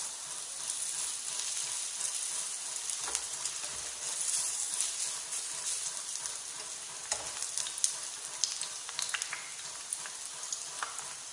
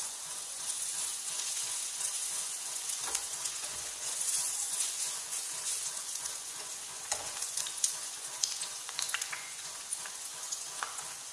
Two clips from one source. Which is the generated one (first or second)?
second